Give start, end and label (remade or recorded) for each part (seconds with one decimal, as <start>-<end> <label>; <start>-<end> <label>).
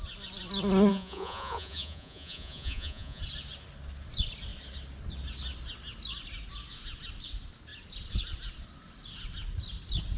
0.0-0.9 recorded; 0.9-3.2 remade; 3.2-10.2 recorded